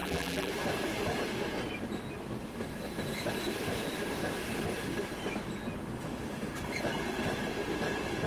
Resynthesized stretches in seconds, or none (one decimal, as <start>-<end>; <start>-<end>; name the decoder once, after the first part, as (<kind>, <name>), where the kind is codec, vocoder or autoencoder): 0.0-0.5 (vocoder, BigVGAN v2)